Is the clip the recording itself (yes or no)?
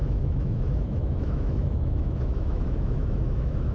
no